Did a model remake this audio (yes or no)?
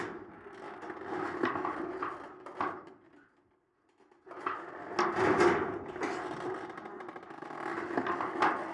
no